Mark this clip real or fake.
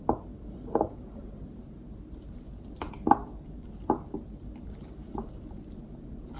real